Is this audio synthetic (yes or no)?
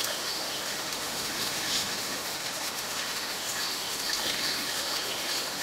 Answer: yes